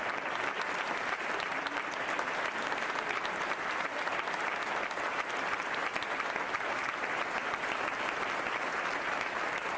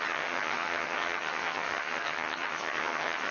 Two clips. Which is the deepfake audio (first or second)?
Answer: second